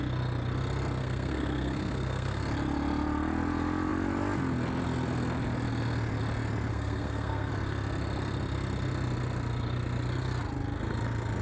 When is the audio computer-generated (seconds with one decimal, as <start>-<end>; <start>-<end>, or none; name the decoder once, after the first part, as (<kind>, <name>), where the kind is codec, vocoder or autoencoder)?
1.0-2.4 (codec, SNAC); 6.7-7.5